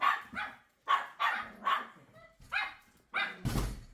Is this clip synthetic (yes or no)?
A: no